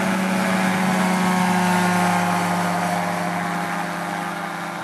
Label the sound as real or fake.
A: real